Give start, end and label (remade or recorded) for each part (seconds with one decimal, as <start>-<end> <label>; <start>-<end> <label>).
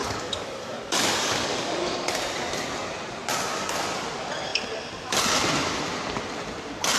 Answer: 0.0-2.2 remade; 2.2-7.0 recorded